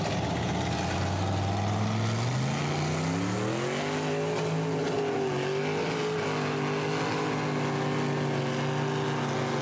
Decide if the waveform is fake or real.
real